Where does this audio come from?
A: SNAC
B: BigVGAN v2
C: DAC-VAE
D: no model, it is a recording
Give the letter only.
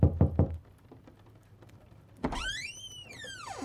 B